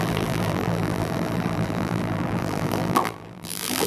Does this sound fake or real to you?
fake